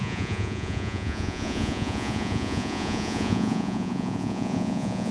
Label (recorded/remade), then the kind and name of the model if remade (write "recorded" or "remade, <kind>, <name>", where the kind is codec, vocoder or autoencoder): remade, vocoder, Vocos